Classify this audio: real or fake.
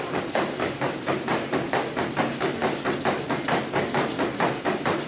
real